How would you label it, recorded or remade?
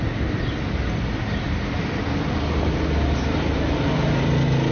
recorded